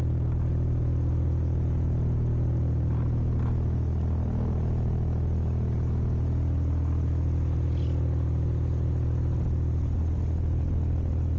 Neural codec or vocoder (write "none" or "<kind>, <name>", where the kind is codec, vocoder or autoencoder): none